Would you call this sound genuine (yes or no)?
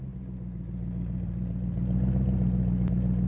yes